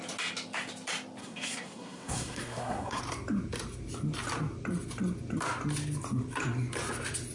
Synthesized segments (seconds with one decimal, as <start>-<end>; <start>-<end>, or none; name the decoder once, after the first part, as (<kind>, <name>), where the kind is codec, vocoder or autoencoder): 1.2-3.0 (codec, SNAC)